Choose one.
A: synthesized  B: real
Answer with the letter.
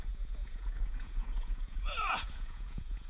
A